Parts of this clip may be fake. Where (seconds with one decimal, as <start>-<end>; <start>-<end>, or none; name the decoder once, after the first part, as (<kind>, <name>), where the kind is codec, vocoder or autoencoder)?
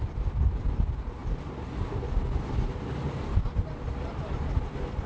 none